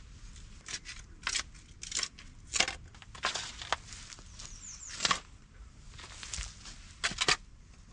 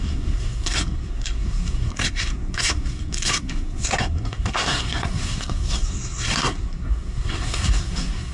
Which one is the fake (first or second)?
second